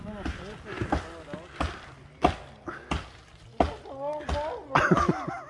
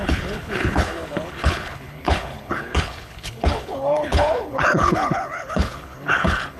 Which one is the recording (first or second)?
first